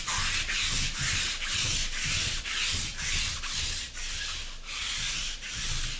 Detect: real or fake real